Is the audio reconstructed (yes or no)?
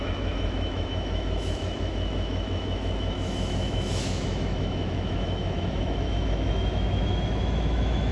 yes